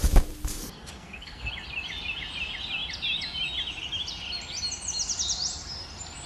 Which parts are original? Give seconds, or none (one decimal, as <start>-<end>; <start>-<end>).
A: 0.0-0.6; 1.5-6.3